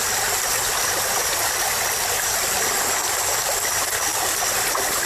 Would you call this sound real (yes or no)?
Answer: yes